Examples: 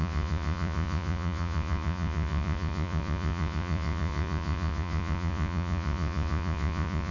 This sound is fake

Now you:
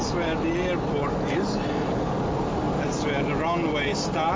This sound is real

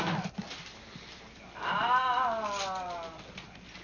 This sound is real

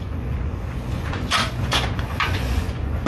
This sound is fake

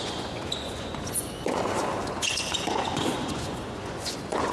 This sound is fake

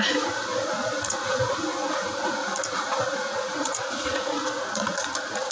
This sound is fake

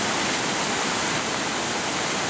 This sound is real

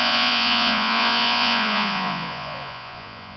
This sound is fake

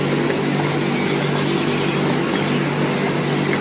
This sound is real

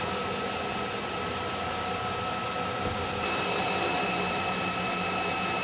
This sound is real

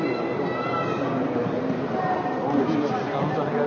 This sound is real